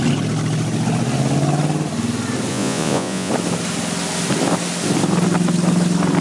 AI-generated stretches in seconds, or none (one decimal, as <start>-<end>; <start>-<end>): 2.5-3.3